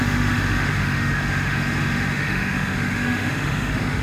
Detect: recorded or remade remade